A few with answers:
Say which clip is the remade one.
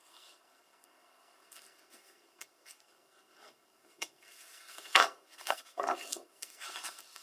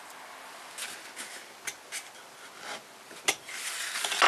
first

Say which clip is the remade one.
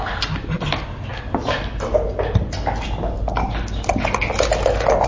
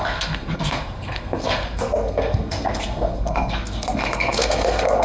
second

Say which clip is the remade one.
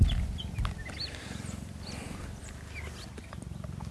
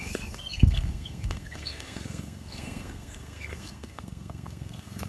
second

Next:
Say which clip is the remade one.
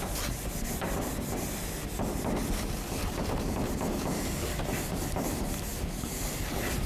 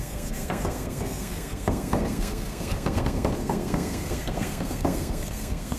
second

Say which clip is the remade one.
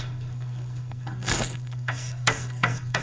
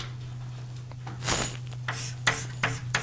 first